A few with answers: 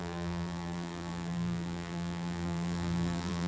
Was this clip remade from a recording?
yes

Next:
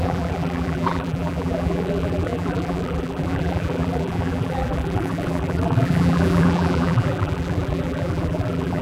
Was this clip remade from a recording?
yes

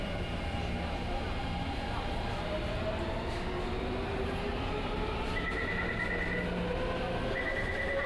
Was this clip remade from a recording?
no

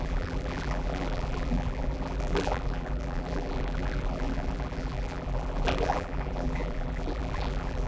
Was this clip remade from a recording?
yes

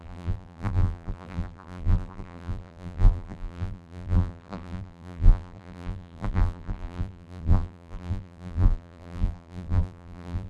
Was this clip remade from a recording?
yes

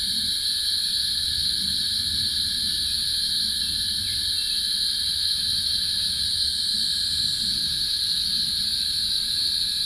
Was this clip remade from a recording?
no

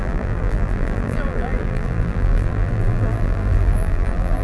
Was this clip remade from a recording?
yes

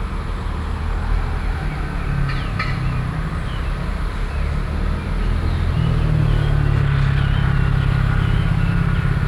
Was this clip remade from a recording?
no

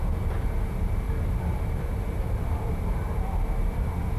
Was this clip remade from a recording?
yes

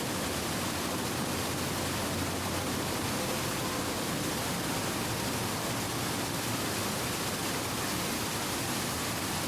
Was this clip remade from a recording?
no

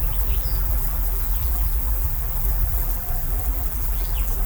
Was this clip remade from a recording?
yes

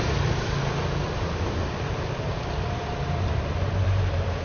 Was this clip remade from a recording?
yes